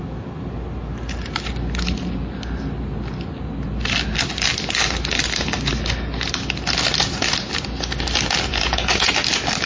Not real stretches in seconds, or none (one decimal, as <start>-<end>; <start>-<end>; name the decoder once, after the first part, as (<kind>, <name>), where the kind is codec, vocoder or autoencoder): 8.5-9.1 (vocoder, Vocos)